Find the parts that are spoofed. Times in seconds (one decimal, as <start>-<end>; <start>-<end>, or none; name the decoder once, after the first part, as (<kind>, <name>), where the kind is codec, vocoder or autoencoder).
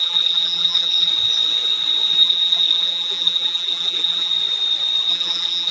0.0-1.1 (vocoder, BigVGAN v2); 2.2-4.3; 5.1-5.7